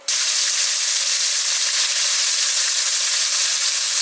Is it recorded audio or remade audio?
recorded